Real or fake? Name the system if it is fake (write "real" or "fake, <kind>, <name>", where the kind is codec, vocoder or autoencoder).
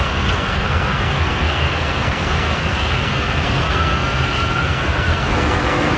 fake, codec, SNAC